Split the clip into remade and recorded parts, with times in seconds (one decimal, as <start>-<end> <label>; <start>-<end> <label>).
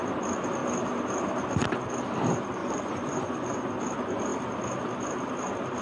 0.0-2.6 recorded; 2.6-3.6 remade; 3.6-5.8 recorded